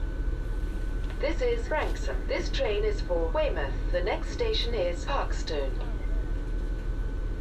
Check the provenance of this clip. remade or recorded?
recorded